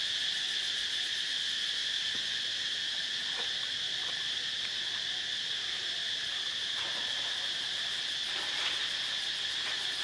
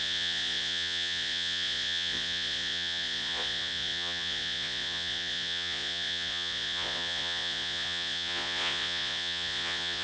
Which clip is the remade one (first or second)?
second